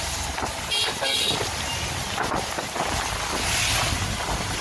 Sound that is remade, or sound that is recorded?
recorded